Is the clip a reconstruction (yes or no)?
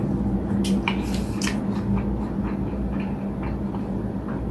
no